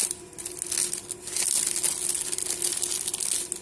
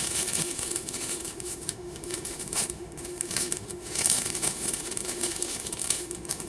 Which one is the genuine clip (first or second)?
first